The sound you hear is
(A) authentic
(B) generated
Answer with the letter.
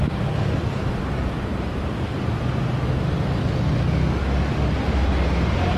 A